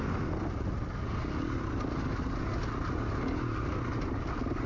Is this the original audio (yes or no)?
yes